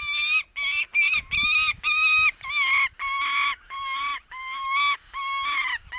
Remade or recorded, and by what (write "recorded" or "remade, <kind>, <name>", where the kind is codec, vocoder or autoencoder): recorded